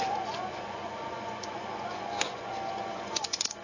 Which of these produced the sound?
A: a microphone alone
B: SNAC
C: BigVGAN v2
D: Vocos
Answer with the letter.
D